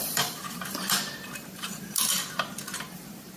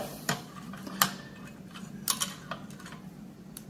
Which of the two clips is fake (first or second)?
first